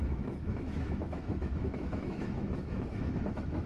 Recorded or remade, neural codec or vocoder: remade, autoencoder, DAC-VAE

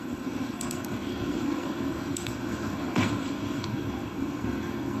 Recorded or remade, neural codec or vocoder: remade, codec, SNAC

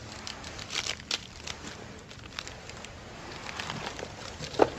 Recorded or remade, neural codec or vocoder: recorded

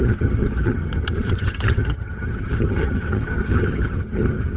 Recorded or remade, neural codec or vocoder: remade, vocoder, HiFi-GAN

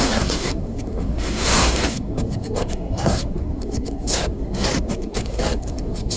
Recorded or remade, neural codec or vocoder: remade, codec, SNAC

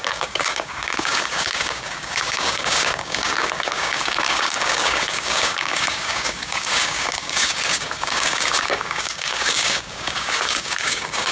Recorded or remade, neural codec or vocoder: remade, codec, DAC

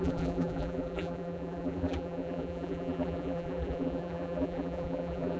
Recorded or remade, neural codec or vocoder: remade, vocoder, BigVGAN v2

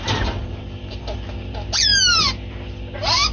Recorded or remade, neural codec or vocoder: recorded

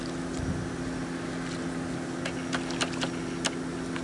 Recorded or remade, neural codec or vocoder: recorded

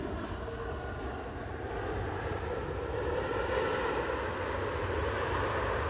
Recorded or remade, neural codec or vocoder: recorded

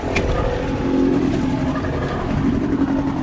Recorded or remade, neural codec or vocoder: recorded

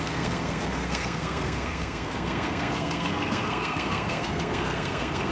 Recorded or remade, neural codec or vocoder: remade, codec, SNAC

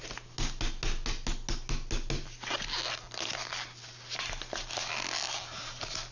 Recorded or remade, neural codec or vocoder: recorded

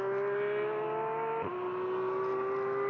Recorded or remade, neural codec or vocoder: recorded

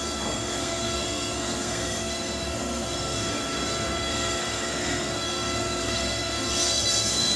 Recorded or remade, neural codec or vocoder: remade, codec, SNAC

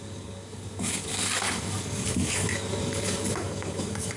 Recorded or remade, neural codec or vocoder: remade, codec, DAC